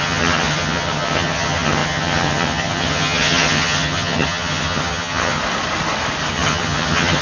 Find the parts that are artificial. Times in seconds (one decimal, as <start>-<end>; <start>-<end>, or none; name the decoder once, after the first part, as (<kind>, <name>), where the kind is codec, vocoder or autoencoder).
0.0-5.4 (vocoder, HiFi-GAN); 6.3-7.2

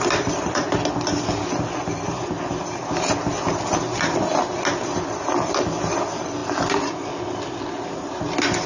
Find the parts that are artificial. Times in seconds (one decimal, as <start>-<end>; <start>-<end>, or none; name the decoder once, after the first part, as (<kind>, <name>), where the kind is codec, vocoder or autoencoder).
none

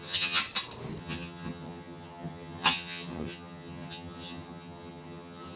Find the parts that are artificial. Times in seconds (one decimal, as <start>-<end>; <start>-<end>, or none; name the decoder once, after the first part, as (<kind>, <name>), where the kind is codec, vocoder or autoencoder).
0.0-0.4 (vocoder, HiFi-GAN); 1.0-5.6

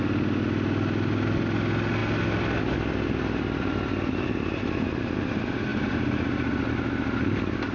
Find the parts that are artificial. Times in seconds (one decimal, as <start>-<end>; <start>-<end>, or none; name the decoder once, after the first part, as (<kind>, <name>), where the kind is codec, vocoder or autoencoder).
none

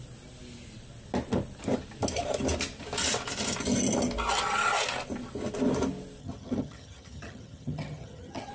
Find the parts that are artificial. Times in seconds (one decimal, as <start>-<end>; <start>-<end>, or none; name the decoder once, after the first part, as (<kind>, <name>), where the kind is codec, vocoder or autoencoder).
6.2-8.5 (vocoder, HiFi-GAN)